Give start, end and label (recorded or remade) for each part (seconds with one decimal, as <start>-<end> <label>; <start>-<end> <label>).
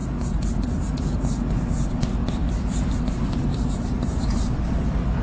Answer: 0.0-3.5 recorded; 3.5-4.5 remade; 4.5-5.2 recorded